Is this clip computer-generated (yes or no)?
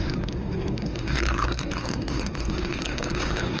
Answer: yes